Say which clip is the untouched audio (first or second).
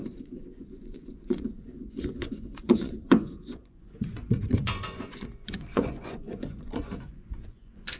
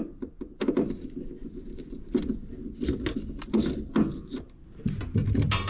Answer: second